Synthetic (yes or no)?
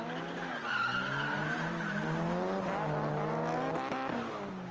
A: no